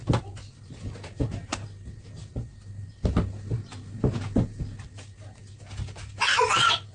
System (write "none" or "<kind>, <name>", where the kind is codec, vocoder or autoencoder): none